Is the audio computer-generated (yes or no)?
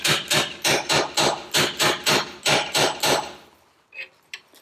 no